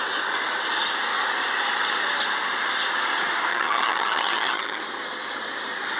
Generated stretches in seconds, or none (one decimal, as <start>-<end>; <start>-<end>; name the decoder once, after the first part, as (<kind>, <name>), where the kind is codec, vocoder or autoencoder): 3.5-4.8 (vocoder, HiFi-GAN)